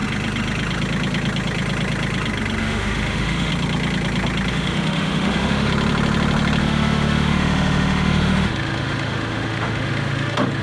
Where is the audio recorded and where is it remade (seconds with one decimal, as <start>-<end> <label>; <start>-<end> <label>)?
0.0-2.6 recorded; 2.6-3.5 remade; 3.5-4.5 recorded; 4.5-5.7 remade; 5.7-6.6 recorded; 6.6-10.6 remade